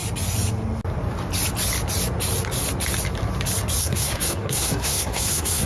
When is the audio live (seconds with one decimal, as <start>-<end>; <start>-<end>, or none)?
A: 0.0-3.8